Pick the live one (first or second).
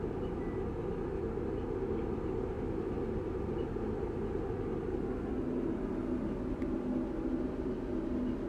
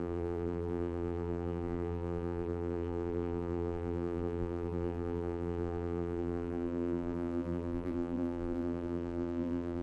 first